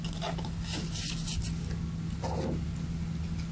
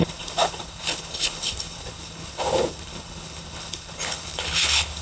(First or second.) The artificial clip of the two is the second